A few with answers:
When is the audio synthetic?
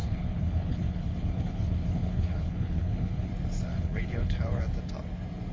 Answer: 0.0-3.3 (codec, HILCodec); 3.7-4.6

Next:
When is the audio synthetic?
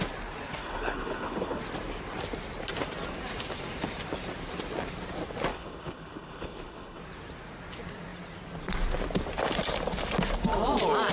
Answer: 0.6-1.6 (codec, HILCodec); 5.5-7.0